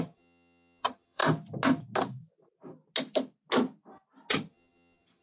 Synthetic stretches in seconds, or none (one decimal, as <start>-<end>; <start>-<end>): 0.0-1.2; 4.3-5.2